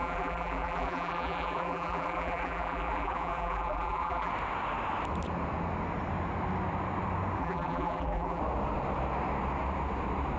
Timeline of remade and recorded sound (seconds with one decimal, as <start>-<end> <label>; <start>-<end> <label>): 0.0-4.3 remade; 4.3-7.4 recorded; 7.4-8.4 remade; 8.4-10.4 recorded